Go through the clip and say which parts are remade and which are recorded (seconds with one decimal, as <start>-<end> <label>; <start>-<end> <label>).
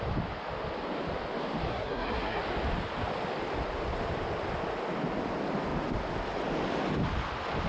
0.0-1.7 recorded; 1.7-2.4 remade; 2.4-7.7 recorded